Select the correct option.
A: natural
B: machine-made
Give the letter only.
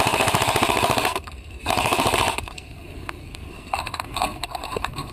B